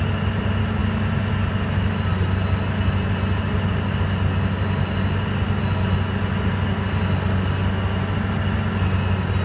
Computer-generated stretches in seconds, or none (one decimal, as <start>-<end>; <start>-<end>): none